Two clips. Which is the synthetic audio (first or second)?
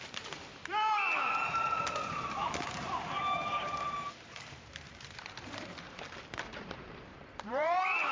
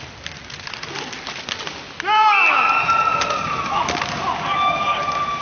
first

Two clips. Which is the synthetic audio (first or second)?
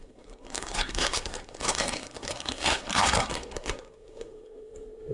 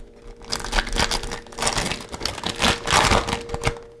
first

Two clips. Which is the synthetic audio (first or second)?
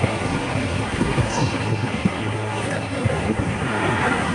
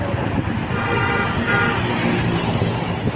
first